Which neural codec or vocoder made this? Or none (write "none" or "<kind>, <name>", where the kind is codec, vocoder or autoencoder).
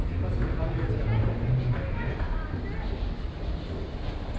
none